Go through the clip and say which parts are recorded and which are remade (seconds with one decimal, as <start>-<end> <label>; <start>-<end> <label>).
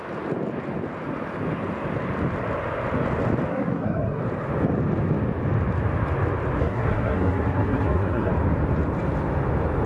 0.0-3.5 recorded; 3.5-4.2 remade; 4.2-6.6 recorded; 6.6-8.3 remade; 8.3-9.9 recorded